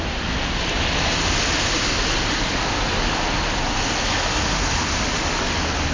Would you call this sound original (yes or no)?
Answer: yes